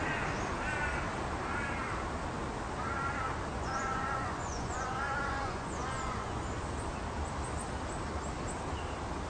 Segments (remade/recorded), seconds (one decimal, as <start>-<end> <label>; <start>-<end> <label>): 0.0-3.5 recorded; 3.5-6.4 remade; 6.4-9.3 recorded